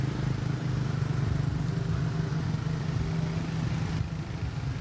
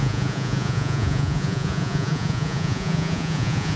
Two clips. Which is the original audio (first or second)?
first